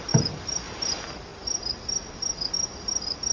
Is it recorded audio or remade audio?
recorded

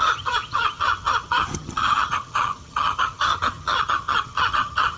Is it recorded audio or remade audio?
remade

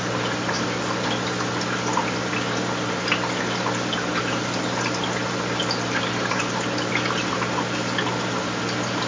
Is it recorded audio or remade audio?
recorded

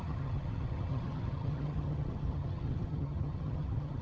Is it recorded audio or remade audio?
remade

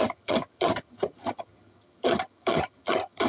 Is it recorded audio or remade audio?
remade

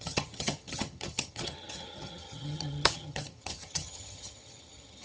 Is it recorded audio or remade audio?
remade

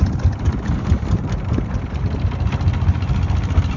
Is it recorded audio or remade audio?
recorded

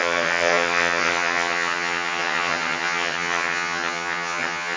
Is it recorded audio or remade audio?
remade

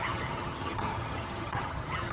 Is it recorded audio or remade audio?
remade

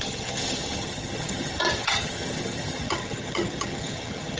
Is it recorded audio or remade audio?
remade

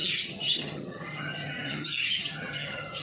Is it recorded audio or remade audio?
remade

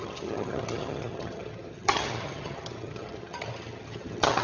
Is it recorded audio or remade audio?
remade